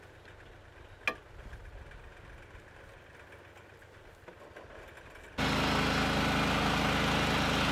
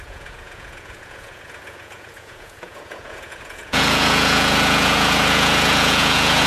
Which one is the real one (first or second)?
first